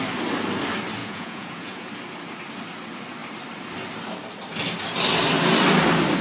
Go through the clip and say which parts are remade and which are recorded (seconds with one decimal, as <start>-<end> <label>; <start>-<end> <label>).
0.0-1.0 recorded; 1.0-1.9 remade; 1.9-6.2 recorded